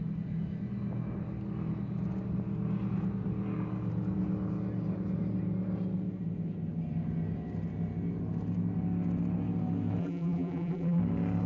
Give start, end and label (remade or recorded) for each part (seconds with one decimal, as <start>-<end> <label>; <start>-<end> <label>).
0.0-10.0 recorded; 10.0-11.0 remade; 11.0-11.5 recorded

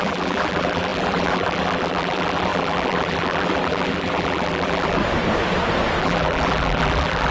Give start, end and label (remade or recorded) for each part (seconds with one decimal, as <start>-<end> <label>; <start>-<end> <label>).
0.0-5.0 remade; 5.0-6.0 recorded; 6.0-7.3 remade

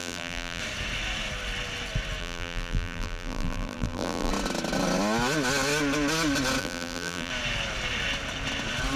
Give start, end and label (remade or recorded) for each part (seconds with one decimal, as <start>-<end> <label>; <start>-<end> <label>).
0.0-0.6 remade; 0.6-2.2 recorded; 2.2-4.3 remade; 4.3-6.6 recorded; 6.6-7.3 remade; 7.3-9.0 recorded